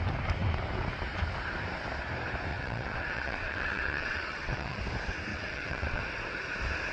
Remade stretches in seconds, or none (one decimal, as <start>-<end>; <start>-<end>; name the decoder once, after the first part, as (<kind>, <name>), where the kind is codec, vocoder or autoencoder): 2.5-4.8 (vocoder, WaveNeXt); 5.3-6.0